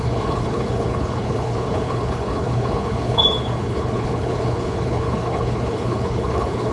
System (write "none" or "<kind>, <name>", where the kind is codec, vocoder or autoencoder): codec, HILCodec